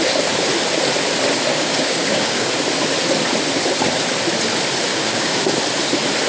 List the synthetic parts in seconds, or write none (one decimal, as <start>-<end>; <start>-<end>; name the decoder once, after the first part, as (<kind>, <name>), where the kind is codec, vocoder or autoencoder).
1.5-2.5 (codec, DAC); 4.9-5.4